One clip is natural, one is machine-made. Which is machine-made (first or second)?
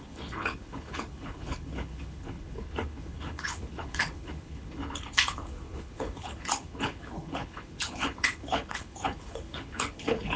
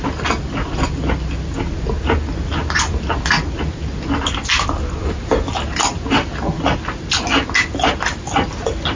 first